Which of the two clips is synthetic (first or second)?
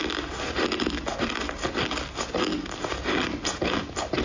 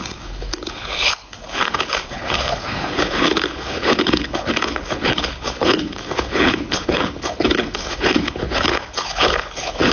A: second